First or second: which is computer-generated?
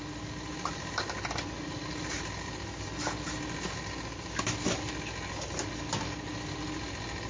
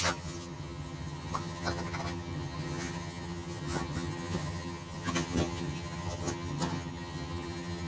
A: second